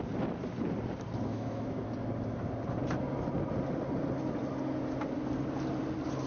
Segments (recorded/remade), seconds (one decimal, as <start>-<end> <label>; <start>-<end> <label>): 0.0-1.3 recorded; 1.3-1.8 remade; 1.8-6.3 recorded